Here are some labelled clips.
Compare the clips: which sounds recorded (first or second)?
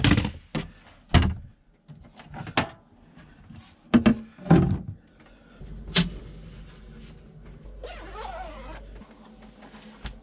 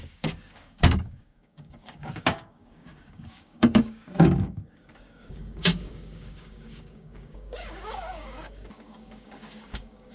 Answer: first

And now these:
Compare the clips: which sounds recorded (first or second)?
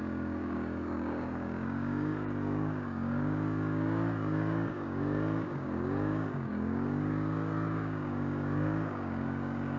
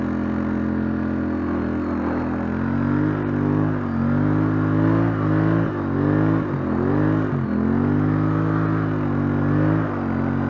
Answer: second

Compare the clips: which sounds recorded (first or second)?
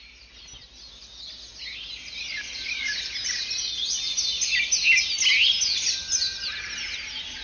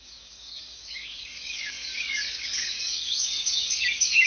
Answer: first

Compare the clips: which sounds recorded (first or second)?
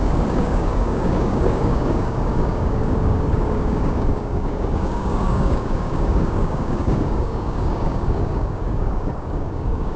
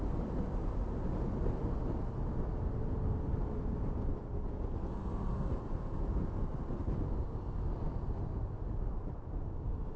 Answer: second